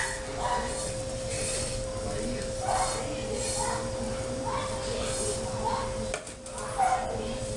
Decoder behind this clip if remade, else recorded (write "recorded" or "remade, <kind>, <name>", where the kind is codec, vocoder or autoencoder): recorded